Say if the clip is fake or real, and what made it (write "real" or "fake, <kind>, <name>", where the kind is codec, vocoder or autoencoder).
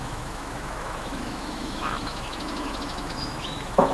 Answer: fake, autoencoder, DAC-VAE